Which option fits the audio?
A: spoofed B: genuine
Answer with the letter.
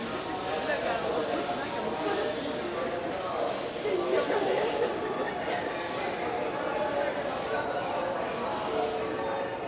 B